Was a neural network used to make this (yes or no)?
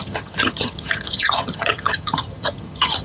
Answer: yes